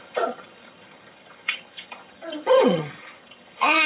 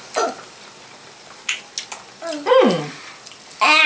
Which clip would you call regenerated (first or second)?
first